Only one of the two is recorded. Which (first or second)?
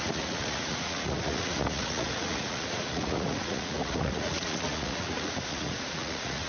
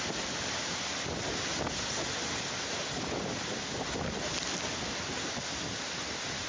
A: second